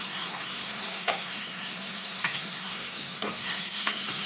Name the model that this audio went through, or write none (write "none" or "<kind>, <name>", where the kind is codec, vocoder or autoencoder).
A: codec, SNAC